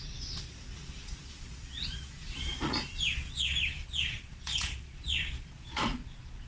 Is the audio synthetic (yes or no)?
yes